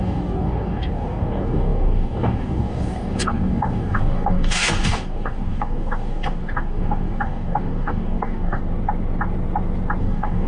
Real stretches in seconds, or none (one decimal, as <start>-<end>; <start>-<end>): 8.6-10.0